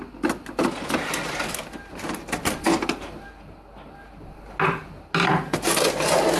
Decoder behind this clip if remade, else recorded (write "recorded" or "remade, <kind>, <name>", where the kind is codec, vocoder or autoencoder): recorded